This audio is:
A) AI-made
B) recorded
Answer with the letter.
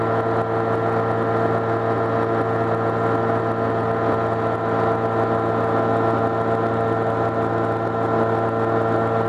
B